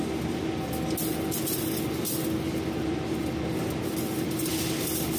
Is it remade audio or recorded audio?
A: recorded